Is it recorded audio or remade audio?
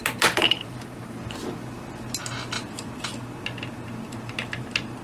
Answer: recorded